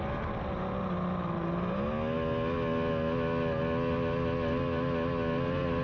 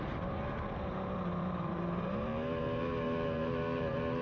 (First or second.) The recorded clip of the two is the first